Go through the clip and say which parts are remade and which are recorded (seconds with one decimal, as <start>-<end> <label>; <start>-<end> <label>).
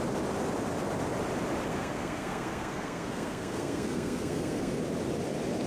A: 0.0-1.7 recorded; 1.7-4.8 remade; 4.8-5.7 recorded